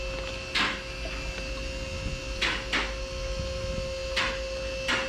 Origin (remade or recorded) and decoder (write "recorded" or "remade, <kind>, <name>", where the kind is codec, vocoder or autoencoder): recorded